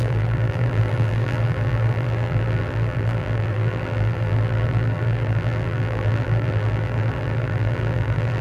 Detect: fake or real fake